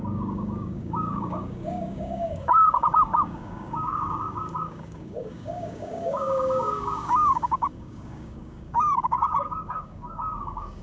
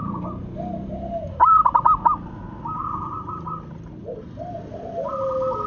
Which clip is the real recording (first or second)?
second